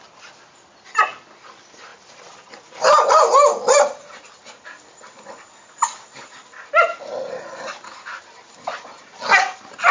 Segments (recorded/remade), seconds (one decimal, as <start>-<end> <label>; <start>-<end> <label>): 0.0-1.9 recorded; 1.9-4.3 remade; 4.3-9.9 recorded